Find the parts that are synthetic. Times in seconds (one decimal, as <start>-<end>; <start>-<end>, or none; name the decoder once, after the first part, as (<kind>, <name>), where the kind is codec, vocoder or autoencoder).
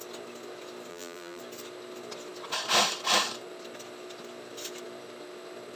0.9-1.4 (vocoder, BigVGAN v2)